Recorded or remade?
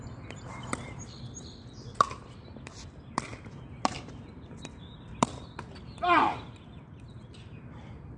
remade